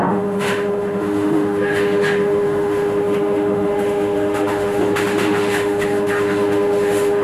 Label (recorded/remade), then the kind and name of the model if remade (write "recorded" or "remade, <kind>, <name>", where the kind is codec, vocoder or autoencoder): remade, autoencoder, DAC-VAE